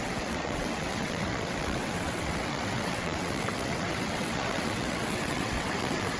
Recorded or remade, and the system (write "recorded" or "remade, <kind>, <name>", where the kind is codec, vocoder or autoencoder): remade, vocoder, WaveNeXt